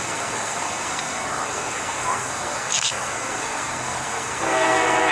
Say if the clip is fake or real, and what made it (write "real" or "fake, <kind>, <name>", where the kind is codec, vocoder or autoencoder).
fake, codec, SNAC